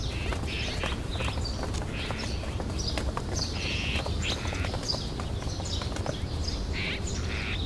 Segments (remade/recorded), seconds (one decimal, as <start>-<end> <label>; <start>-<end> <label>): 0.0-7.7 recorded